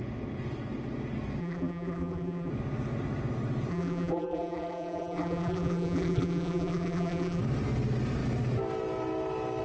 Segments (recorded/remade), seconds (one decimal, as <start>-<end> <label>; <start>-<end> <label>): 0.0-1.4 recorded; 1.4-2.5 remade; 2.5-3.7 recorded; 3.7-7.4 remade; 7.4-9.6 recorded